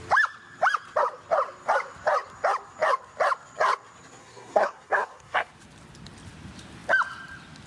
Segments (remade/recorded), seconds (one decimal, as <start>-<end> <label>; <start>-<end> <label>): 0.0-4.2 recorded; 4.2-5.5 remade; 5.5-7.7 recorded